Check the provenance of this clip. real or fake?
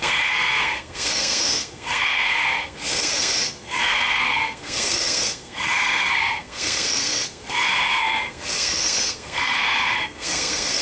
fake